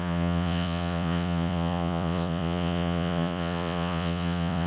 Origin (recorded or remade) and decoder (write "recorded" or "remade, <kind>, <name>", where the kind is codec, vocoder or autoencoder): remade, vocoder, Vocos